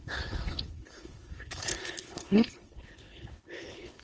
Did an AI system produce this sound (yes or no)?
yes